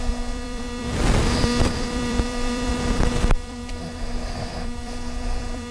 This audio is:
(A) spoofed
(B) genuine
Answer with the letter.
A